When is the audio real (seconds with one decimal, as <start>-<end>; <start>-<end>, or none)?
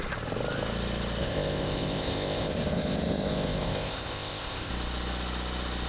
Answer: 0.0-1.2; 4.7-5.9